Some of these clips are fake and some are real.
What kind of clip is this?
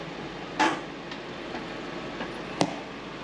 real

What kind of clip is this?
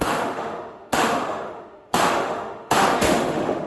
fake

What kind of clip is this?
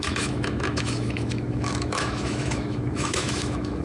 fake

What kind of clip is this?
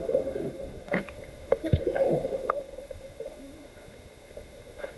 fake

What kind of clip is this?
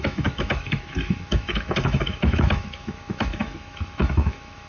fake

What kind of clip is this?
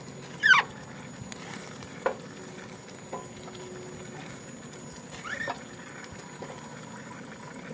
real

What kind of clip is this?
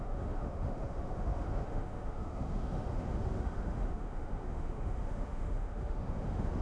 fake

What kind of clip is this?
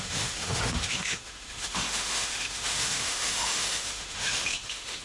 fake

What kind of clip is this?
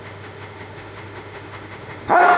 fake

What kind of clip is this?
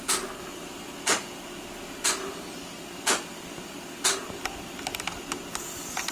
real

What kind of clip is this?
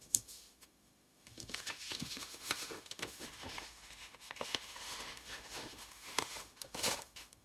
fake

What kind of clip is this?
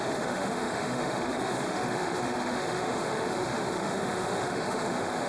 fake